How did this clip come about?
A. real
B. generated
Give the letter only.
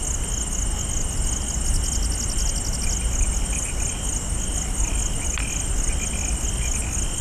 A